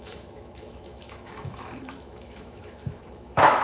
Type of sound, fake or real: fake